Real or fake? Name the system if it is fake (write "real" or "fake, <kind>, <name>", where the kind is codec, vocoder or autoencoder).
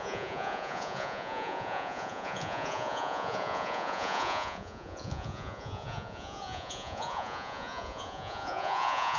fake, vocoder, Vocos